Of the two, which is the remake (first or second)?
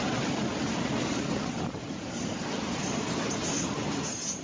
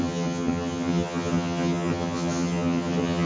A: second